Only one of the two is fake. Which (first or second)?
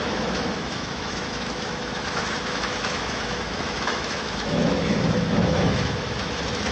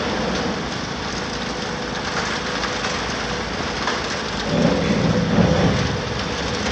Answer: first